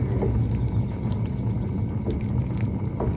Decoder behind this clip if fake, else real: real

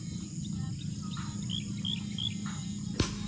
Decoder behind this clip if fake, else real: real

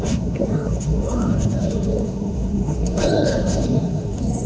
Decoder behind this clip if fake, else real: fake, codec, SNAC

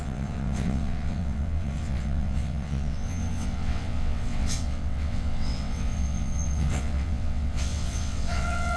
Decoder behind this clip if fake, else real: fake, vocoder, WaveNeXt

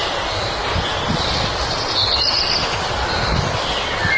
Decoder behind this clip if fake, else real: real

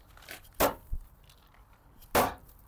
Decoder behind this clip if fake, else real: real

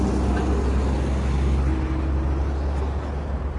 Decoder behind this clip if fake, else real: real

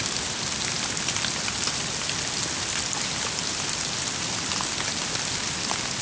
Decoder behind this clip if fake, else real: real